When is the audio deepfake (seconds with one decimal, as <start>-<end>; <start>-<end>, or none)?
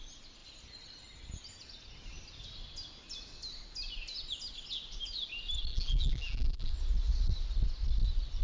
5.7-6.7